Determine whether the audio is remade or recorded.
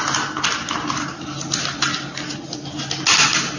recorded